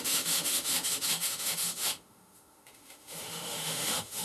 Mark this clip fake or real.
fake